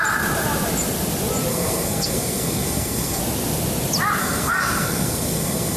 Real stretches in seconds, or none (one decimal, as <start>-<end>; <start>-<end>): 0.0-1.5; 3.2-4.2